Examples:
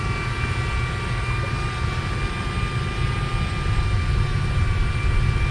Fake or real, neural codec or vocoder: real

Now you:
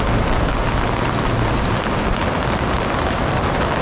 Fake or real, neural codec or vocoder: real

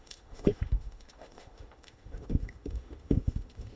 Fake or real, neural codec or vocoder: fake, autoencoder, DAC-VAE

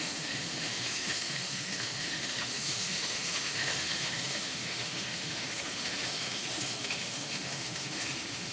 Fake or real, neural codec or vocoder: fake, autoencoder, DAC-VAE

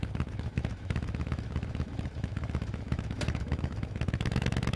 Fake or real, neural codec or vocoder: fake, autoencoder, DAC-VAE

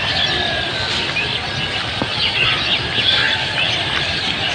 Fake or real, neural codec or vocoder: real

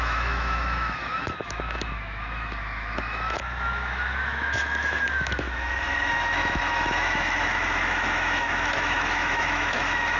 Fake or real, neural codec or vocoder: fake, autoencoder, DAC-VAE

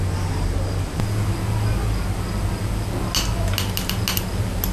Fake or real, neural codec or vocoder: real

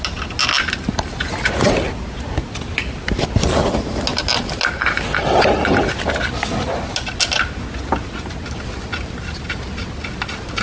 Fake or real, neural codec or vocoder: real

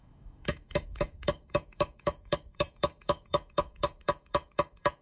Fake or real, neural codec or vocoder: fake, autoencoder, DAC-VAE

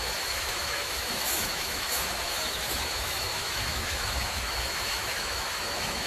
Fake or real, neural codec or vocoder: fake, autoencoder, DAC-VAE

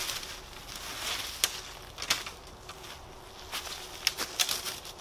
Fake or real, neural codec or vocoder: real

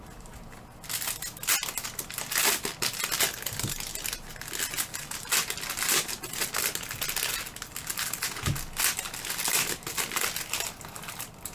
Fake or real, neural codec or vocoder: real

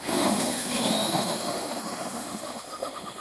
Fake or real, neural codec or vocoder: fake, autoencoder, DAC-VAE